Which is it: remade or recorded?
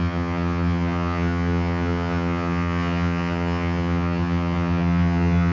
remade